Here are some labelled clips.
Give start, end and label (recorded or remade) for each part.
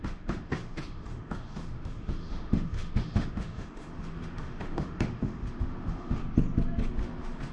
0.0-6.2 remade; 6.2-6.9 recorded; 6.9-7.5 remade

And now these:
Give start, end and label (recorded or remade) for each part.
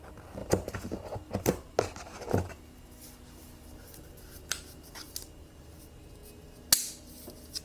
0.0-7.6 recorded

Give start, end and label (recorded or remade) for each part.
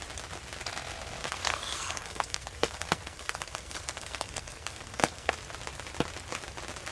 0.0-1.2 recorded; 1.2-5.3 remade; 5.3-6.9 recorded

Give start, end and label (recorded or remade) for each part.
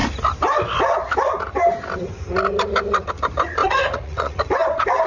0.0-3.6 recorded; 3.6-4.4 remade; 4.4-5.1 recorded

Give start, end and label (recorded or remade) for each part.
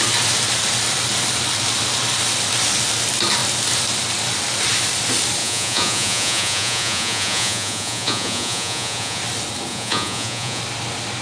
0.0-5.4 recorded; 5.4-9.2 remade; 9.2-9.7 recorded; 9.7-10.6 remade; 10.6-11.2 recorded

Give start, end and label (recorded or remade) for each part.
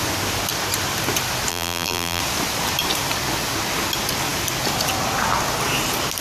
0.0-1.5 recorded; 1.5-2.2 remade; 2.2-6.2 recorded